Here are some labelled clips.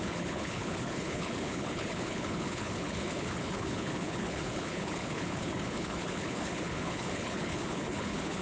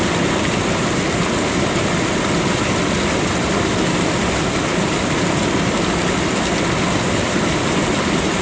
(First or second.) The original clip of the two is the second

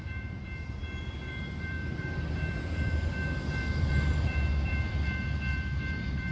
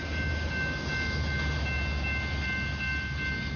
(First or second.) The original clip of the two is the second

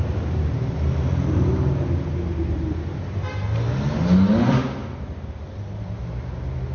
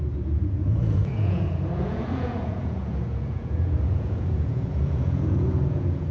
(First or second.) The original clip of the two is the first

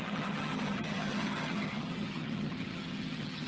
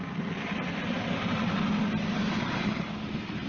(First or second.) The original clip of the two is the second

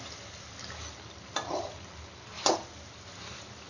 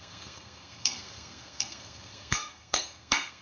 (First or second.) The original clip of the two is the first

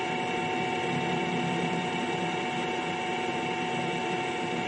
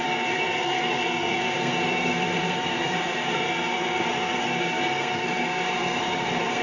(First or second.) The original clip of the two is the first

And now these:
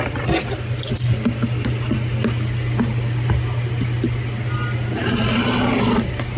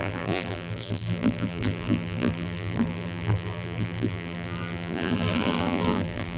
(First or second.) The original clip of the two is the first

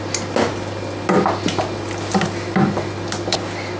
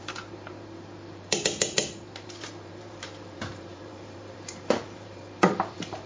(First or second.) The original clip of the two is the first